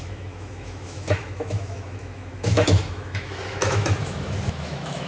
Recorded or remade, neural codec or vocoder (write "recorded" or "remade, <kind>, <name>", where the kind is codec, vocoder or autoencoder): remade, autoencoder, DAC-VAE